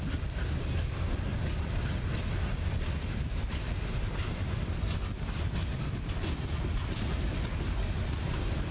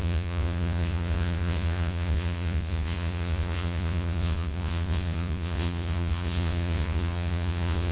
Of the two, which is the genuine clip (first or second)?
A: first